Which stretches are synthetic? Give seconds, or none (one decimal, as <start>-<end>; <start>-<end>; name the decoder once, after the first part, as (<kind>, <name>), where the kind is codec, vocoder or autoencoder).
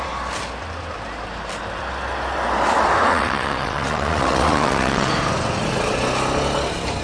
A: 3.1-5.1 (vocoder, WaveNeXt)